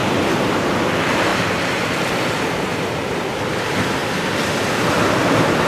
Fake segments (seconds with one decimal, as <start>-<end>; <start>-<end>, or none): 0.0-0.8; 1.3-1.9; 2.7-3.2